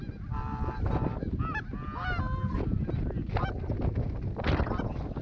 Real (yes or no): yes